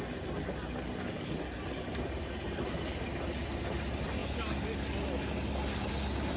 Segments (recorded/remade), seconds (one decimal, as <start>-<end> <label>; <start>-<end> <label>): 0.0-6.4 recorded